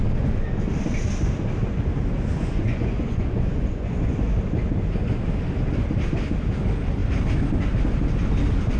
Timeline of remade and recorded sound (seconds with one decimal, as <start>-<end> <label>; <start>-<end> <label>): 0.0-2.3 recorded; 2.3-4.2 remade; 4.2-8.8 recorded